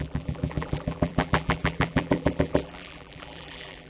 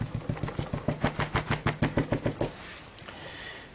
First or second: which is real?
second